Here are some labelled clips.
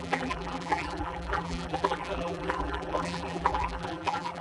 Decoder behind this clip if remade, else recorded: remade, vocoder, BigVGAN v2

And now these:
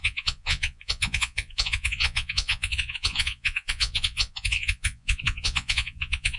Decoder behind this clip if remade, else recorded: remade, vocoder, Vocos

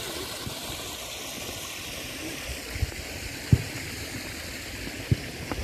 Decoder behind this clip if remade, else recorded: recorded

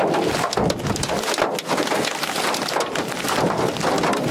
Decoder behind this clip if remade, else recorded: recorded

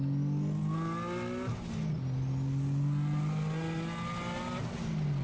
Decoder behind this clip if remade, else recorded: recorded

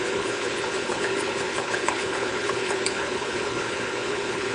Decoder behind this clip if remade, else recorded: remade, codec, HILCodec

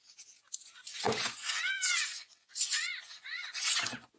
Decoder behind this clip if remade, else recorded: remade, vocoder, Vocos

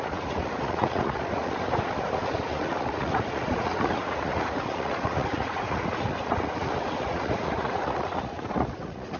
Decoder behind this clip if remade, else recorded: remade, vocoder, Vocos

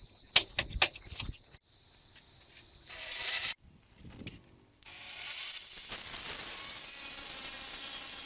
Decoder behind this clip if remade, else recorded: recorded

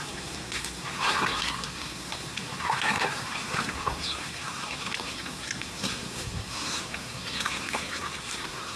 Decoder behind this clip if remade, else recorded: remade, codec, SNAC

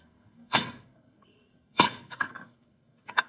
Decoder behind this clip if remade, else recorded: remade, codec, SNAC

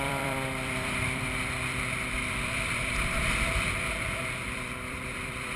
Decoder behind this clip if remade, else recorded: remade, vocoder, BigVGAN v2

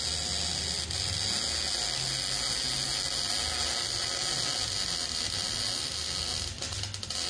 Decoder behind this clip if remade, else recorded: recorded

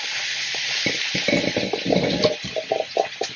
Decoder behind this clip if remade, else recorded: recorded